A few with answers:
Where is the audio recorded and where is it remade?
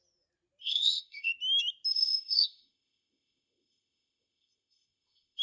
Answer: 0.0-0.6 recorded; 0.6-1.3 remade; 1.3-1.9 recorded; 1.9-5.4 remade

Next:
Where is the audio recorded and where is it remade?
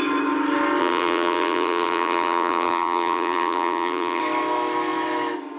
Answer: 0.0-0.8 recorded; 0.8-4.2 remade; 4.2-5.6 recorded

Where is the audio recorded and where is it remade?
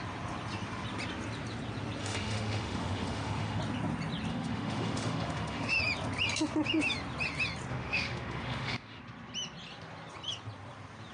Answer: 0.0-2.0 recorded; 2.0-3.6 remade; 3.6-4.3 recorded; 4.3-5.8 remade; 5.8-7.7 recorded; 7.7-9.0 remade; 9.0-11.1 recorded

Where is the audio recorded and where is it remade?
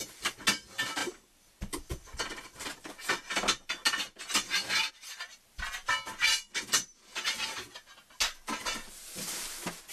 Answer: 0.0-9.9 recorded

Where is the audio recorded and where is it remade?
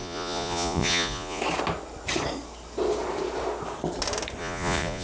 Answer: 0.0-1.4 remade; 1.4-4.4 recorded; 4.4-5.0 remade